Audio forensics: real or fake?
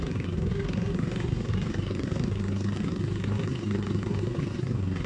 fake